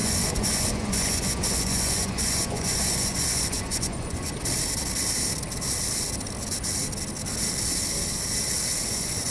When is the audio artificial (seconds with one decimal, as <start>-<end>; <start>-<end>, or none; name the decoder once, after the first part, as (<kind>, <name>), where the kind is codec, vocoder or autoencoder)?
0.0-4.3 (vocoder, Vocos); 8.9-9.3